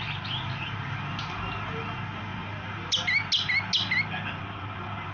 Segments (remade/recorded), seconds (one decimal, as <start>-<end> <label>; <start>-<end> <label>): 0.0-5.1 recorded